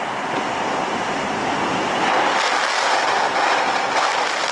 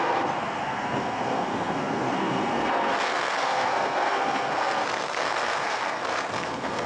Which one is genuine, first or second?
first